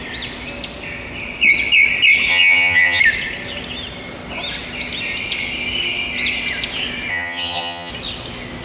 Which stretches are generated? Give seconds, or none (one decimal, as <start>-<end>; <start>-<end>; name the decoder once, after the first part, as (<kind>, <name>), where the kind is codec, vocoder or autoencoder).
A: 2.3-3.0 (vocoder, HiFi-GAN); 7.1-7.9

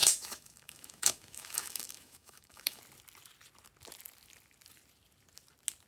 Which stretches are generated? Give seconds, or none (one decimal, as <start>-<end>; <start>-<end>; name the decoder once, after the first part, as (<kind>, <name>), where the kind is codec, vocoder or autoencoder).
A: 0.0-2.8 (autoencoder, DAC-VAE)

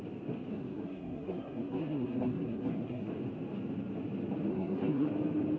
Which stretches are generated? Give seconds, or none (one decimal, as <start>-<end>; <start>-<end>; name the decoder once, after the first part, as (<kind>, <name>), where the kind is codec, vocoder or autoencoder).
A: 0.5-3.1 (codec, SNAC); 4.5-5.1

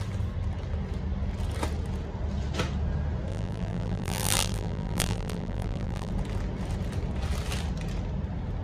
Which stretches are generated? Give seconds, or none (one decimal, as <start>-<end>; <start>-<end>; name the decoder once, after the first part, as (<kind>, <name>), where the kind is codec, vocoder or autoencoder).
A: 3.3-6.1 (vocoder, BigVGAN v2)